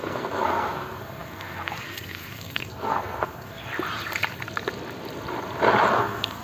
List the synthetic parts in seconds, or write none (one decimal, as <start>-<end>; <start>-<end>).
0.0-3.7; 6.0-6.4